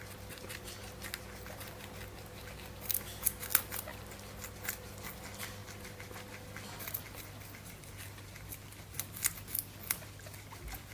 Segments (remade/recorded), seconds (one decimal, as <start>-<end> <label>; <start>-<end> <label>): 0.0-10.9 recorded